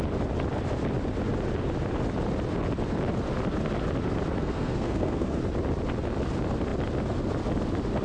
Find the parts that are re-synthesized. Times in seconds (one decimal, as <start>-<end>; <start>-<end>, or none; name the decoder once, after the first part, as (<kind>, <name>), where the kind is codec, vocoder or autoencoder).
4.4-5.4 (codec, SNAC)